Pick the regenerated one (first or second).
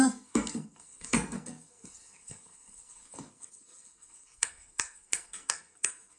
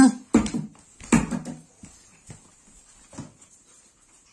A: first